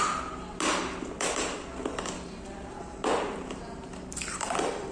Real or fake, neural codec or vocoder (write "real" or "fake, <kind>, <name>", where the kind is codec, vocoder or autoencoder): real